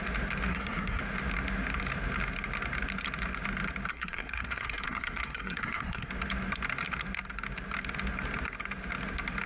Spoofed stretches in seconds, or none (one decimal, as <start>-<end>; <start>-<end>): 0.5-1.0; 3.9-6.1